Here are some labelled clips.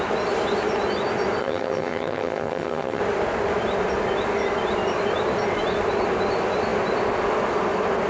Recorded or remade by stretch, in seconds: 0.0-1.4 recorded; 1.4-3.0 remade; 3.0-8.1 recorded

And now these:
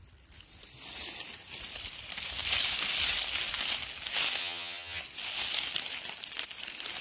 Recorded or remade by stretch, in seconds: 0.0-4.4 recorded; 4.4-5.0 remade; 5.0-7.0 recorded

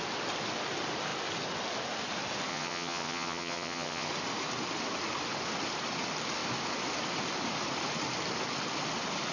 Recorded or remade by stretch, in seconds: 0.0-2.5 recorded; 2.5-4.1 remade; 4.1-9.3 recorded

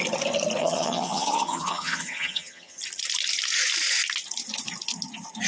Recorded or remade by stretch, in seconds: 0.0-0.6 recorded; 0.6-2.8 remade; 2.8-5.5 recorded

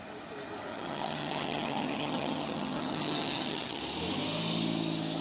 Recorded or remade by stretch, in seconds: 0.0-0.7 recorded; 0.7-3.8 remade; 3.8-5.2 recorded

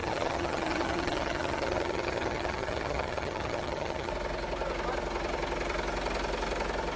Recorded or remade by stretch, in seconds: 0.0-4.1 remade; 4.1-7.0 recorded

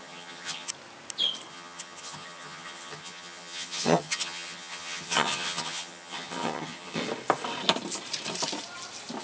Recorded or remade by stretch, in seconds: 0.0-0.7 remade; 0.7-1.5 recorded; 1.5-7.0 remade; 7.0-9.2 recorded

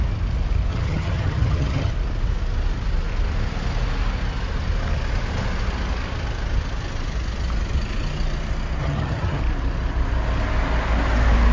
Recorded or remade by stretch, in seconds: 0.0-0.7 recorded; 0.7-1.9 remade; 1.9-8.8 recorded; 8.8-9.4 remade; 9.4-11.5 recorded